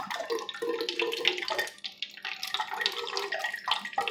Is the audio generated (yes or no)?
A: no